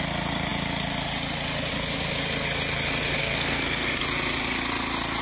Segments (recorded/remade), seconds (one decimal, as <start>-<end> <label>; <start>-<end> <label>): 0.0-3.2 recorded; 3.2-3.9 remade; 3.9-5.2 recorded